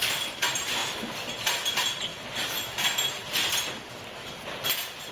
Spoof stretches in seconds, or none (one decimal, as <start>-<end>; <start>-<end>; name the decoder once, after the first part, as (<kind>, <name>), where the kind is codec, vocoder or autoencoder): 0.0-0.8 (vocoder, BigVGAN v2); 1.7-2.1